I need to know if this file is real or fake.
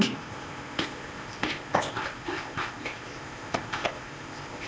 fake